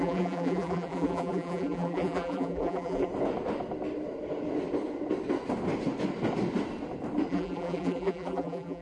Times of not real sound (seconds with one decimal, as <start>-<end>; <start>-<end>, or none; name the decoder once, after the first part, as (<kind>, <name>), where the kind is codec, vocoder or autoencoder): 0.0-3.1 (vocoder, BigVGAN v2); 7.3-8.8